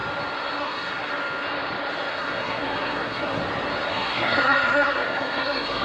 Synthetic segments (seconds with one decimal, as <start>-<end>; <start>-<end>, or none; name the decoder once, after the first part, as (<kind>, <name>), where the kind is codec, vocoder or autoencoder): 0.6-1.1 (codec, SNAC); 2.1-3.4; 3.9-5.8